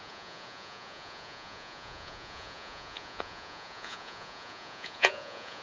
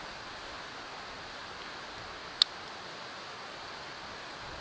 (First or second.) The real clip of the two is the second